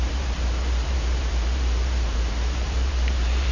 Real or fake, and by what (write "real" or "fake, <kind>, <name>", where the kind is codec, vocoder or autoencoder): fake, vocoder, BigVGAN v2